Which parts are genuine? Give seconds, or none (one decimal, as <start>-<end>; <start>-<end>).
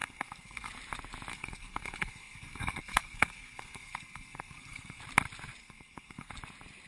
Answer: 0.7-1.3; 5.0-5.6; 6.3-6.9